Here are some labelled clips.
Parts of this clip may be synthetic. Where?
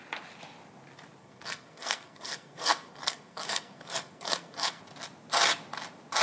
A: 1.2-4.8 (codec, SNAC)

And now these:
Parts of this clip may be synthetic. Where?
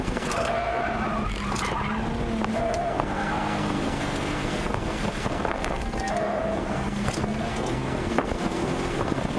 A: 0.0-0.8 (codec, SNAC); 2.6-9.4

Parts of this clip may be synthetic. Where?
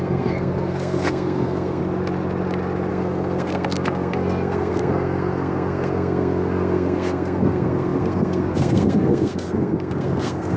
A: 0.0-1.8 (codec, SNAC); 2.9-10.6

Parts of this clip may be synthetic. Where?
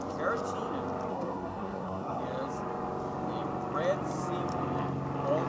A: 1.1-2.2 (codec, SNAC)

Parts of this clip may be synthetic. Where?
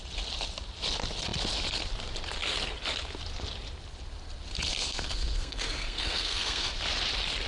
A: 4.8-6.7 (codec, SNAC)